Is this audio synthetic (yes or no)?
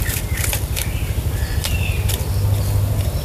yes